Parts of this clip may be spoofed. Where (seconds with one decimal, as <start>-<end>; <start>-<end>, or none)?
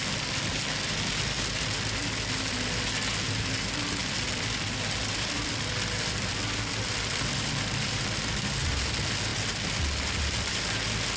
4.0-8.8